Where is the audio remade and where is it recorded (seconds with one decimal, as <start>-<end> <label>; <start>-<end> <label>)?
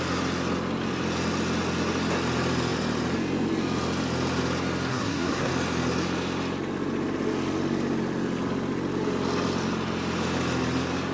0.0-4.9 recorded; 4.9-5.5 remade; 5.5-11.1 recorded